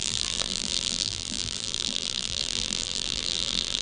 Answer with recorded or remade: remade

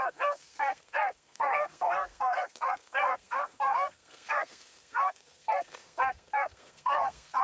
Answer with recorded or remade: remade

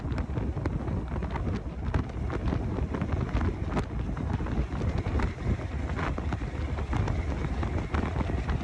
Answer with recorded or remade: recorded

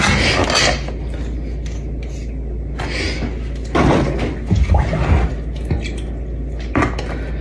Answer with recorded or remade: recorded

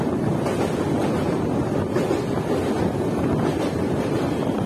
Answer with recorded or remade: recorded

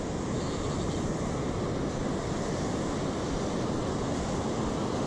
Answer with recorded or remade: recorded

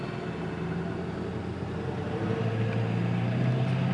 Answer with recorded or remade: recorded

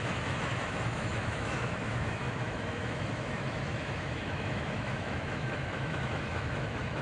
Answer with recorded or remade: remade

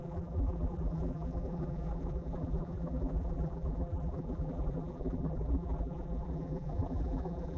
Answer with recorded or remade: remade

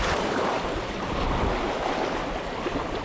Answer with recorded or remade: recorded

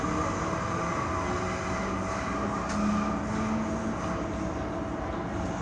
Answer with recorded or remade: recorded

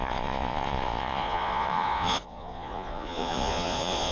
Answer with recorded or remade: remade